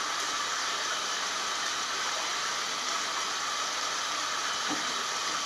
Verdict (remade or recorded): recorded